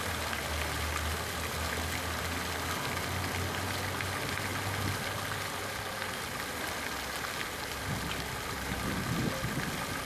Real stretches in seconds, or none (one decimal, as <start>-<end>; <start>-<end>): 0.0-10.0